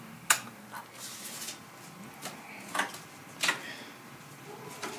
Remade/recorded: recorded